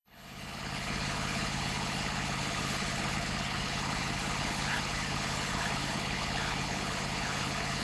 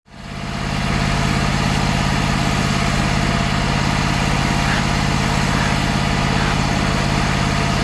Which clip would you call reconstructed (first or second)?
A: first